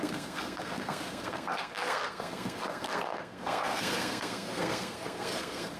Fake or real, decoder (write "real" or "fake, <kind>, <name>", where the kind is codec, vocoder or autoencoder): fake, codec, SNAC